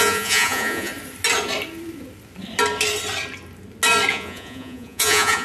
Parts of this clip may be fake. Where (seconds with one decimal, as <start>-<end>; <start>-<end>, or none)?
0.0-0.9; 4.1-5.4